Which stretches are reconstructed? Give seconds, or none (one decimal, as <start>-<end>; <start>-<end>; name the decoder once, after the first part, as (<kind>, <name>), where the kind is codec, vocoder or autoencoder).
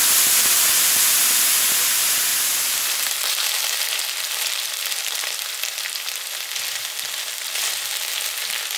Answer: 2.3-5.6 (vocoder, BigVGAN v2)